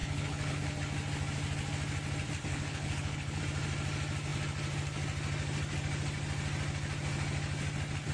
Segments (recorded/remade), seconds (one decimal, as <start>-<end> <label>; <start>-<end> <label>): 0.0-0.6 remade; 0.6-2.5 recorded; 2.5-3.4 remade; 3.4-8.1 recorded